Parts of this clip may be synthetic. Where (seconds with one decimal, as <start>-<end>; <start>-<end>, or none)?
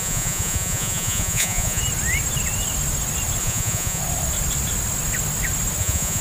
0.0-1.8; 3.4-4.0; 5.8-6.2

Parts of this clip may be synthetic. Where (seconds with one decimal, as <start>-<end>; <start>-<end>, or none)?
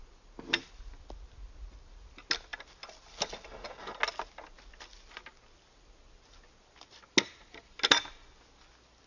none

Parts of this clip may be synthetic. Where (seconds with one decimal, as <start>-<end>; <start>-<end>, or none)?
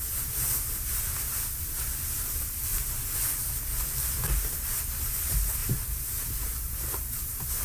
2.7-3.5; 5.6-7.6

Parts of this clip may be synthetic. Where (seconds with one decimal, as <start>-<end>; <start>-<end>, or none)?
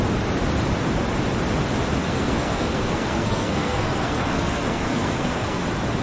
2.0-5.6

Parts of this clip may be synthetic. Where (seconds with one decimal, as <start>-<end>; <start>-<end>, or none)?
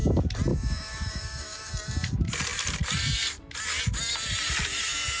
0.5-1.7